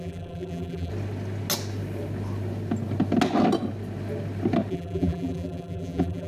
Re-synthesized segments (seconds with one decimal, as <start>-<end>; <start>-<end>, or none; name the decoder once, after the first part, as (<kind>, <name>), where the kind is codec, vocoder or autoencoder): 0.0-0.9 (vocoder, BigVGAN v2); 4.7-6.3